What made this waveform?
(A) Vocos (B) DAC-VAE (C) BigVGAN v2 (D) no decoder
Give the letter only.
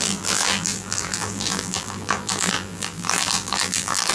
C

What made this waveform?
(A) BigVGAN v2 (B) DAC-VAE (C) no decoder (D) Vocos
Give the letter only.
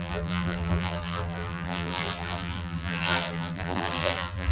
A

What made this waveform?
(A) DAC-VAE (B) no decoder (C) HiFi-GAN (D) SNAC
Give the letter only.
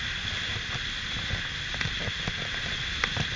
B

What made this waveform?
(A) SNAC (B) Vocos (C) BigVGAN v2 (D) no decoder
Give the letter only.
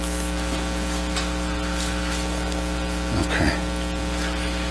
D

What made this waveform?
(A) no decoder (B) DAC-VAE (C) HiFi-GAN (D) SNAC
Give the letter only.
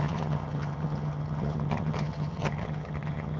C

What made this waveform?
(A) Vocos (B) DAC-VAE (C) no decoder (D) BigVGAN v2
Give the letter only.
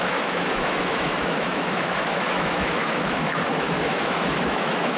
B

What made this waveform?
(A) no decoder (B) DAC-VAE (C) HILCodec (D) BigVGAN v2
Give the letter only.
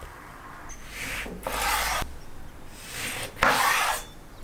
A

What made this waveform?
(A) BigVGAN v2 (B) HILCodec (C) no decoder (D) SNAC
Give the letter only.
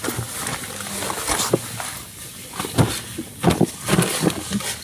C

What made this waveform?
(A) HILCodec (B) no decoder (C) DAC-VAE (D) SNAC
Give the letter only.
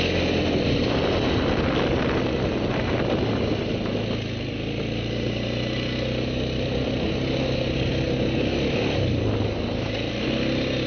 B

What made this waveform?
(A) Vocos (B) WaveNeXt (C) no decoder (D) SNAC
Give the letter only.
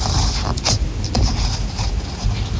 C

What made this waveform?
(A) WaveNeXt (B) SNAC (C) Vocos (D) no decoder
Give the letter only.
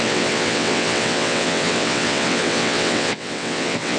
A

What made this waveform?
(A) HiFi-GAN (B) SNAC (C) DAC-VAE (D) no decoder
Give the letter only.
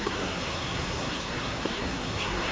B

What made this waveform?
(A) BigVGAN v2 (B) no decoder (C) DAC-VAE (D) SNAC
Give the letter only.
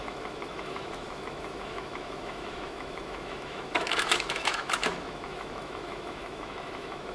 C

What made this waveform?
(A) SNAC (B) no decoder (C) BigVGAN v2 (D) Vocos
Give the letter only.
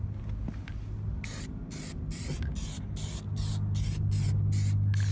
B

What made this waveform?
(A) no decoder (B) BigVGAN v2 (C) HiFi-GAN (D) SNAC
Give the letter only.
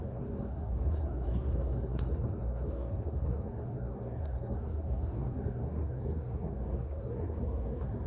D